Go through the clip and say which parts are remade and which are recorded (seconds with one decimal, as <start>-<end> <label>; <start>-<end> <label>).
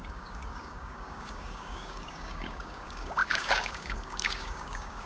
0.0-5.1 remade